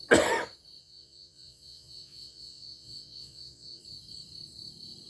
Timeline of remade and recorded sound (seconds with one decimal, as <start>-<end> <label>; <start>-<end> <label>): 0.0-0.8 recorded; 0.8-3.8 remade; 3.8-5.1 recorded